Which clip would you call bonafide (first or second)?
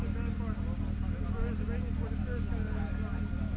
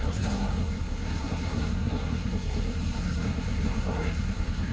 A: first